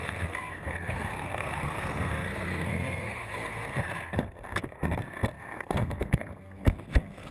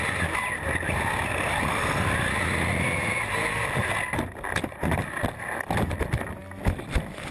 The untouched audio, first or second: second